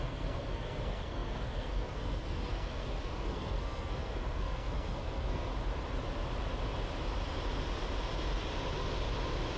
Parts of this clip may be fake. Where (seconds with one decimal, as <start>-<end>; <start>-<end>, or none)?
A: 0.0-5.5